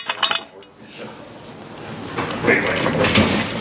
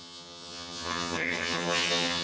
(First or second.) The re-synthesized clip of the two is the second